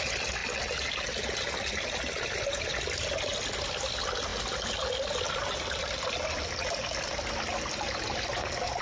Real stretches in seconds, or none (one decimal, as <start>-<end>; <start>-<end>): 0.0-8.8